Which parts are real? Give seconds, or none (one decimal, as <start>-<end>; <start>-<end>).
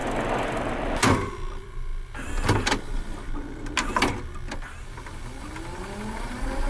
0.0-6.7